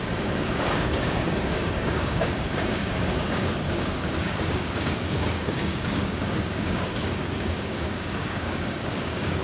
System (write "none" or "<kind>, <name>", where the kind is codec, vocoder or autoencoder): codec, DAC